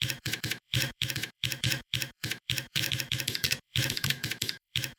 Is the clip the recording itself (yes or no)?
no